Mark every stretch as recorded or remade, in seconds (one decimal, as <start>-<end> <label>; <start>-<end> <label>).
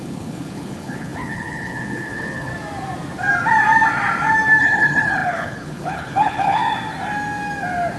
0.0-2.5 remade; 2.5-4.6 recorded; 4.6-6.6 remade; 6.6-8.0 recorded